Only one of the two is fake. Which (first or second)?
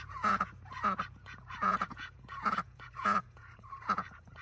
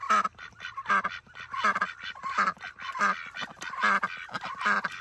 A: first